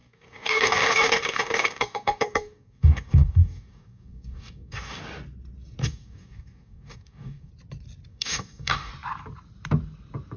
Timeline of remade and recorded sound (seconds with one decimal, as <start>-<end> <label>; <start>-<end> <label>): 0.0-5.0 remade; 5.0-5.8 recorded; 5.8-7.5 remade; 7.5-8.1 recorded; 8.1-8.9 remade; 8.9-10.4 recorded